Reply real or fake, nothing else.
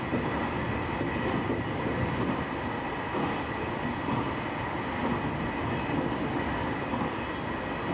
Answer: real